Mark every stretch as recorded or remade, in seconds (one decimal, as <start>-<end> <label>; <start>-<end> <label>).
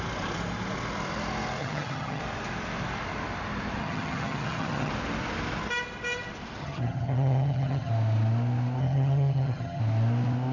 0.0-1.6 recorded; 1.6-2.2 remade; 2.2-3.8 recorded; 3.8-4.9 remade; 4.9-6.6 recorded; 6.6-7.9 remade; 7.9-8.8 recorded; 8.8-9.8 remade; 9.8-10.5 recorded